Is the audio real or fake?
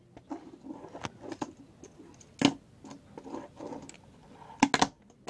real